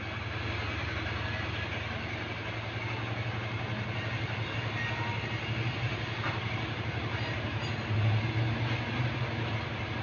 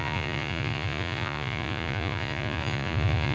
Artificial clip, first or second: second